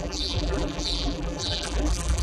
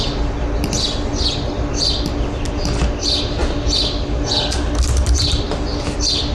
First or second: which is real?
second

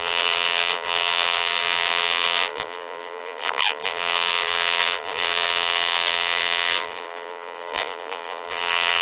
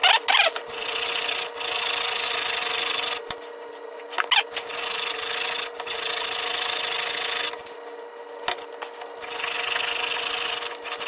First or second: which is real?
second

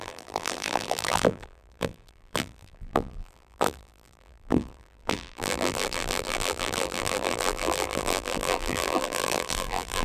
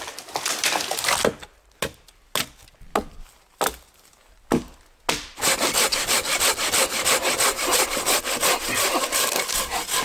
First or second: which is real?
second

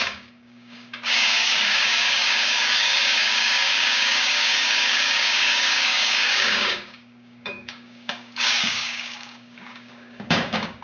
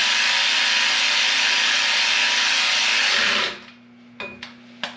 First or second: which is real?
second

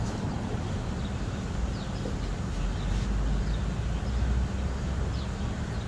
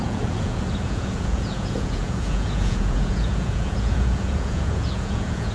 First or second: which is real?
first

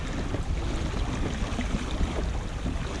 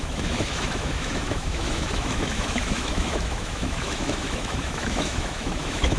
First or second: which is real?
first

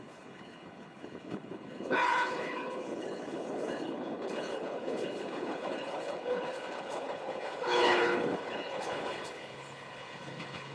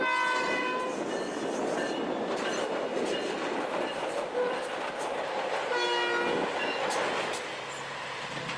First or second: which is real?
second